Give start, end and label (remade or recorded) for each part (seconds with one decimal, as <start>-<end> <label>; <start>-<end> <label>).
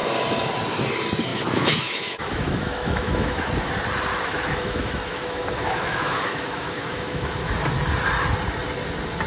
0.0-1.3 recorded; 1.3-3.5 remade; 3.5-4.1 recorded; 4.1-7.5 remade; 7.5-9.3 recorded